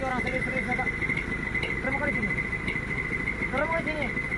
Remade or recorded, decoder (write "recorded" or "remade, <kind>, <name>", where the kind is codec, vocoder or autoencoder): recorded